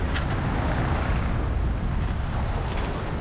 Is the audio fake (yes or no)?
no